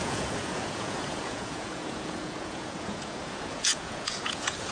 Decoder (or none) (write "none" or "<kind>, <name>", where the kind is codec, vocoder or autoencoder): vocoder, Vocos